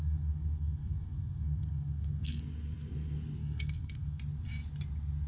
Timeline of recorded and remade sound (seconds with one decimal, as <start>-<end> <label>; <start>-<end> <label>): 0.0-2.4 remade; 2.4-3.4 recorded; 3.4-4.2 remade; 4.2-5.3 recorded